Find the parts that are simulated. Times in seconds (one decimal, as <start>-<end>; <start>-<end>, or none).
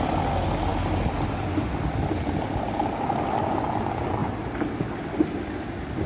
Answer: 4.2-4.7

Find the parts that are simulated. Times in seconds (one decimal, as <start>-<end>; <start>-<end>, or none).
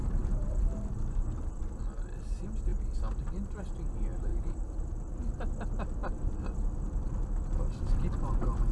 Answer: 0.0-1.5; 4.3-5.2